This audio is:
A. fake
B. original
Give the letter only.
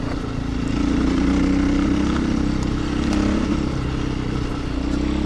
B